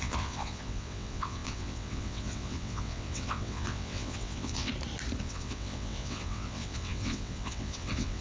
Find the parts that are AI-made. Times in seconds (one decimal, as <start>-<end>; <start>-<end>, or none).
0.0-4.7; 5.2-8.2